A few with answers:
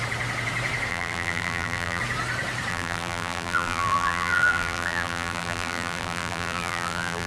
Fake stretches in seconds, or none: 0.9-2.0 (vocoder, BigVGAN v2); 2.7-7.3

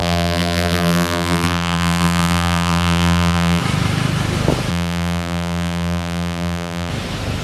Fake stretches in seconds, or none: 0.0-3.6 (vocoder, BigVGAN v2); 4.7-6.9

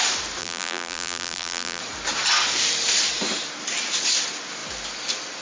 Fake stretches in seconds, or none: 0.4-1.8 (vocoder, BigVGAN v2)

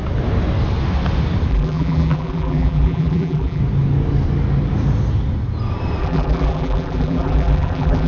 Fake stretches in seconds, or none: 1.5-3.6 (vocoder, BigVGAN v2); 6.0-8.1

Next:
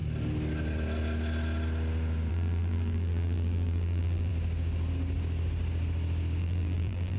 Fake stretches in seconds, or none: 2.3-4.3 (vocoder, BigVGAN v2); 6.4-7.2

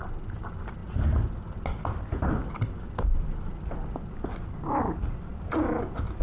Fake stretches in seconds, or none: none

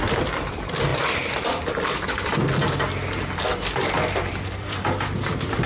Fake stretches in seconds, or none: 0.0-2.3 (vocoder, BigVGAN v2); 4.1-5.7

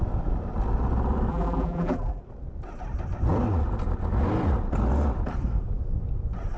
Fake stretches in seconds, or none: 1.3-2.2 (vocoder, BigVGAN v2)